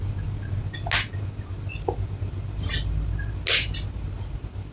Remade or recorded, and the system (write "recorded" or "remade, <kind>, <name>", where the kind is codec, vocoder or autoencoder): recorded